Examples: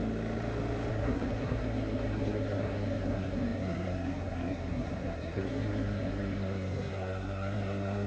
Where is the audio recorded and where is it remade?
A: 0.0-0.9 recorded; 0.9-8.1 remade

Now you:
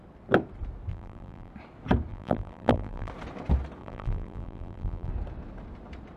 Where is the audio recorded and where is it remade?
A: 0.0-0.9 recorded; 0.9-1.5 remade; 1.5-2.1 recorded; 2.1-3.1 remade; 3.1-3.8 recorded; 3.8-5.1 remade; 5.1-6.2 recorded

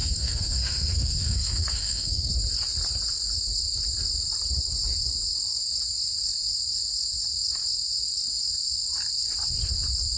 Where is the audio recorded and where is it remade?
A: 0.0-2.3 remade; 2.3-10.2 recorded

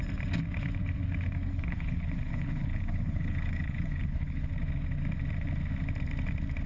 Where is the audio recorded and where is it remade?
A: 0.0-1.5 recorded; 1.5-4.5 remade; 4.5-6.7 recorded

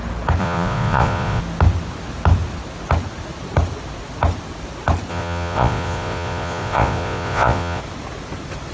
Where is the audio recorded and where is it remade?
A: 0.0-0.4 recorded; 0.4-1.4 remade; 1.4-5.1 recorded; 5.1-7.8 remade; 7.8-8.7 recorded

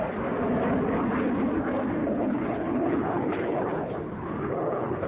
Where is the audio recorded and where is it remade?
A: 0.0-2.0 recorded; 2.0-5.1 remade

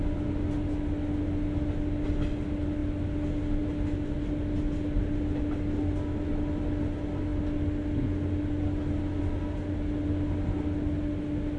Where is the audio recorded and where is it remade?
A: 0.0-11.6 recorded